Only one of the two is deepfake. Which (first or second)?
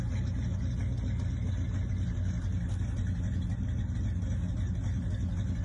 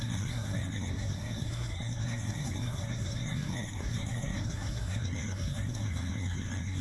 second